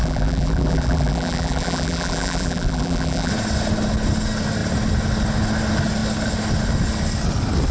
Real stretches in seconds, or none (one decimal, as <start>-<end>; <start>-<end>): 3.3-7.7